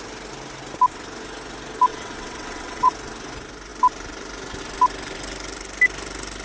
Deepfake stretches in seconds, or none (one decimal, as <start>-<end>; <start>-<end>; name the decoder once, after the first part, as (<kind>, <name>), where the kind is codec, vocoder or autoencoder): 1.9-2.9 (vocoder, WaveNeXt)